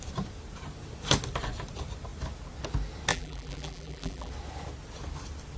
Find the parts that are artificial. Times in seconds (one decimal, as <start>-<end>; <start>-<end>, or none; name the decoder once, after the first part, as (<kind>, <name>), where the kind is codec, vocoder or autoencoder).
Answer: 3.1-4.3 (vocoder, BigVGAN v2)